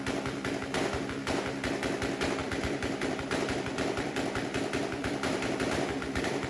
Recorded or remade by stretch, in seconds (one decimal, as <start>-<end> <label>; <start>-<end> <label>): 0.0-2.4 recorded; 2.4-6.5 remade